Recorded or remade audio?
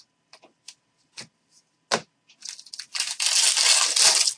recorded